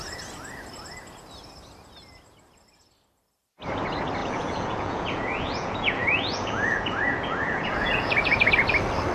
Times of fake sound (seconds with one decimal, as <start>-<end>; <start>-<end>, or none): 4.2-8.5